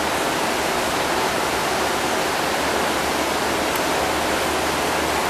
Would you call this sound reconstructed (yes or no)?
no